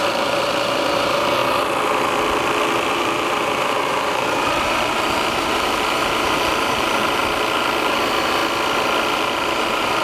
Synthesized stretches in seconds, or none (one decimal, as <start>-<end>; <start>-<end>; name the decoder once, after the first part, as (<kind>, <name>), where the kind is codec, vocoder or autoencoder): 0.0-1.4 (vocoder, BigVGAN v2); 2.9-7.2; 7.8-8.4; 9.1-10.0